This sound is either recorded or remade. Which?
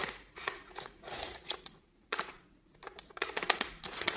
remade